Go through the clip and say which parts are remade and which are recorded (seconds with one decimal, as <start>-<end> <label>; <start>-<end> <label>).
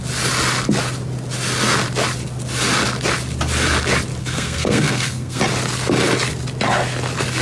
0.0-4.2 recorded; 4.2-5.4 remade; 5.4-7.4 recorded